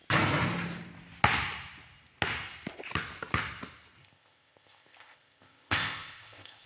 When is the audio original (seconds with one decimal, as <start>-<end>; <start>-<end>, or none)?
0.0-4.0